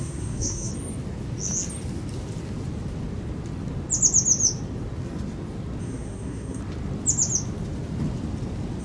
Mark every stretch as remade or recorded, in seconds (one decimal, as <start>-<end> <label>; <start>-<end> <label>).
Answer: 0.0-0.7 remade; 0.7-5.8 recorded; 5.8-6.6 remade; 6.6-8.8 recorded